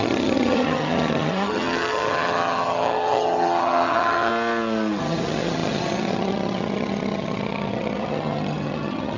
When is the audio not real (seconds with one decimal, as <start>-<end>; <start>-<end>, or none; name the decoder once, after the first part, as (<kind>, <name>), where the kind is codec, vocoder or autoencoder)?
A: 0.0-4.3 (vocoder, HiFi-GAN); 5.0-9.2